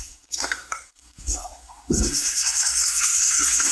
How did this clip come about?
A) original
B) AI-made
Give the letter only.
B